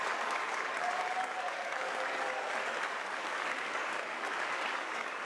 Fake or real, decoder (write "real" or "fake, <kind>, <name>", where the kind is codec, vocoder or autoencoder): fake, codec, DAC